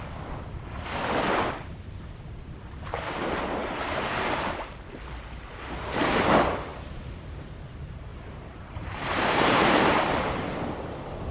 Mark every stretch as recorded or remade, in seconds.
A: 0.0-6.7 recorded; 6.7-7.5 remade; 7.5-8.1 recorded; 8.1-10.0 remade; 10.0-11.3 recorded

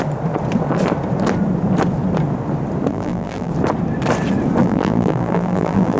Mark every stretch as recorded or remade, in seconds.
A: 0.0-2.9 recorded; 2.9-3.5 remade; 3.5-4.6 recorded; 4.6-6.0 remade

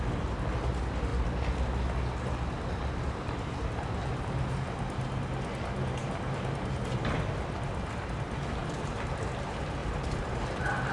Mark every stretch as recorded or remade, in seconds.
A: 0.0-6.0 recorded; 6.0-7.3 remade; 7.3-8.6 recorded; 8.6-9.2 remade; 9.2-9.8 recorded; 9.8-10.9 remade

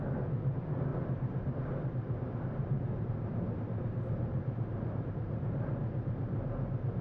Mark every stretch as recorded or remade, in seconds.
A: 0.0-0.9 recorded; 0.9-5.1 remade; 5.1-7.0 recorded